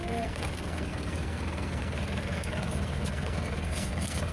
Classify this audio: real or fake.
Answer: fake